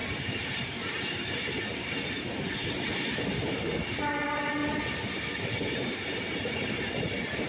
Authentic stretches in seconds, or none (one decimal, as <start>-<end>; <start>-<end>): 4.6-5.4